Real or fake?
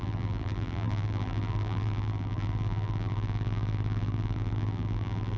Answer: fake